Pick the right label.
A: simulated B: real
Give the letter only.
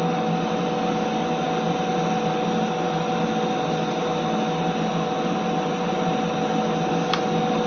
B